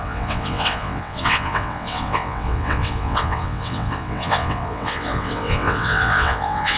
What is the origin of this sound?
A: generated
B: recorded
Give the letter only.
A